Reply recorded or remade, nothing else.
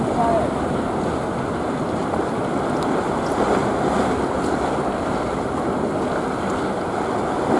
recorded